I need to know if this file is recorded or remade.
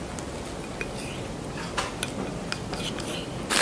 recorded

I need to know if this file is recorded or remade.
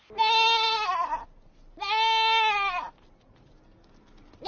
recorded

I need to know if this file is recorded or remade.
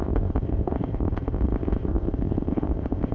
remade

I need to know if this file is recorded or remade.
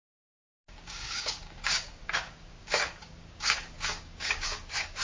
remade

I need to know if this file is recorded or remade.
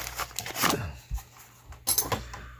recorded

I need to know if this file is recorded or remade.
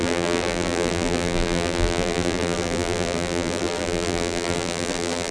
remade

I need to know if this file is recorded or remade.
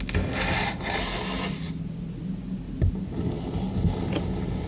recorded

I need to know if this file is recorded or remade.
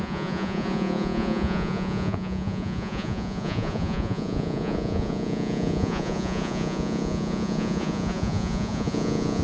remade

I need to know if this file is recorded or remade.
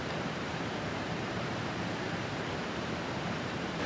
remade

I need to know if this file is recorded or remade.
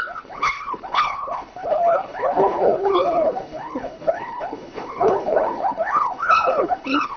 remade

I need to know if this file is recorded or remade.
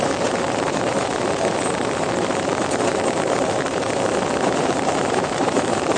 remade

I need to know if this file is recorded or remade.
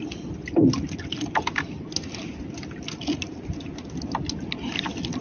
recorded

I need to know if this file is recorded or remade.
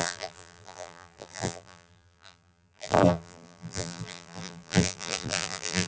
remade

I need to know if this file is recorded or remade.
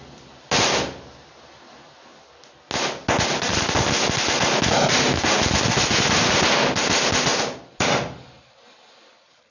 recorded